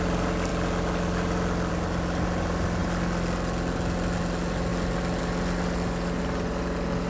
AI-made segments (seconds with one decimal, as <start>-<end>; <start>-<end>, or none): none